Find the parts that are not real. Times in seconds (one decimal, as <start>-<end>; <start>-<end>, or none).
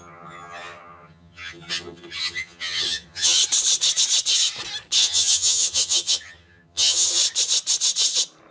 0.0-3.4; 5.0-7.2